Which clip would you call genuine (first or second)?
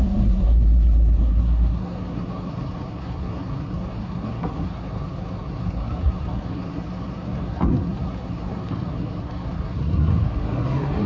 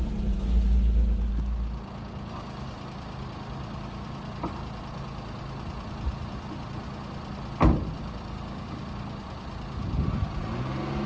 second